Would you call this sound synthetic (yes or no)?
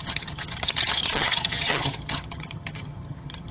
yes